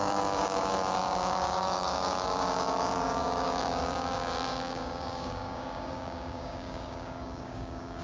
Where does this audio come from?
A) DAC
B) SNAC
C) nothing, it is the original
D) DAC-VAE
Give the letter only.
A